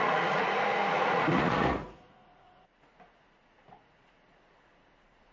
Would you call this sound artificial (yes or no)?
yes